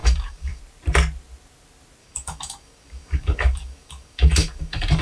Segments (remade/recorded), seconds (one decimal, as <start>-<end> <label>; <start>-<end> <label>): 0.0-0.6 remade; 0.6-2.0 recorded; 2.0-5.0 remade